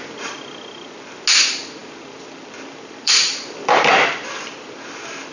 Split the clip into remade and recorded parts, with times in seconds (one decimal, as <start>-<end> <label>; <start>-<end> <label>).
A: 0.0-1.8 recorded; 1.8-5.3 remade

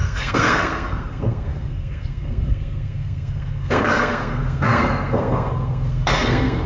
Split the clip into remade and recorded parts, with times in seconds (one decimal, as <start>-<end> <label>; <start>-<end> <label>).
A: 0.0-6.7 remade

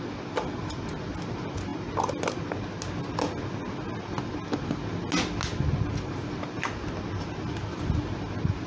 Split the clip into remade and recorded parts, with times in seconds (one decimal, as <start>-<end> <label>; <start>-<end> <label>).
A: 0.0-8.7 recorded

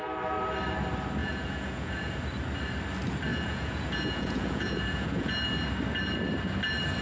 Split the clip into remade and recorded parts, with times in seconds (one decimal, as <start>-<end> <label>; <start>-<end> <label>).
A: 0.0-1.2 recorded; 1.2-2.2 remade; 2.2-3.3 recorded; 3.3-5.3 remade; 5.3-7.0 recorded

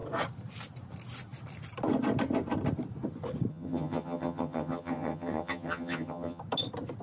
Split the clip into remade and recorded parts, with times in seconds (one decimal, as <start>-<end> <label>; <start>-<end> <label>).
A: 0.0-3.5 recorded; 3.5-6.4 remade; 6.4-7.0 recorded

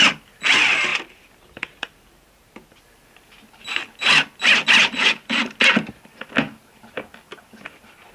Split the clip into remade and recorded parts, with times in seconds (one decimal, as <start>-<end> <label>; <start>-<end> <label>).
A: 0.0-0.9 recorded; 0.9-2.8 remade; 2.8-4.8 recorded; 4.8-5.4 remade; 5.4-8.1 recorded

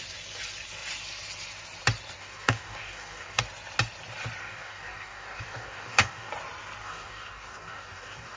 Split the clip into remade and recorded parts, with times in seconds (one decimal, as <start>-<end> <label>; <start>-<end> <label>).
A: 0.0-2.2 recorded; 2.2-3.4 remade; 3.4-4.4 recorded; 4.4-6.3 remade; 6.3-6.8 recorded; 6.8-8.4 remade

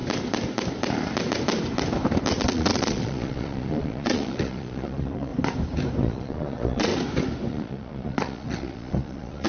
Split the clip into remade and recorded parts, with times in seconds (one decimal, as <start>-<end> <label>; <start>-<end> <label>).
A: 0.0-2.4 recorded; 2.4-5.3 remade; 5.3-6.0 recorded; 6.0-6.9 remade; 6.9-7.5 recorded; 7.5-9.5 remade